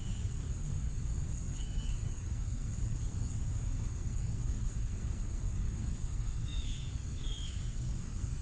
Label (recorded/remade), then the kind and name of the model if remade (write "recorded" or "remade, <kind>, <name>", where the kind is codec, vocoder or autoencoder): remade, codec, SNAC